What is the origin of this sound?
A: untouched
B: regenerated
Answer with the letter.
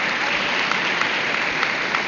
A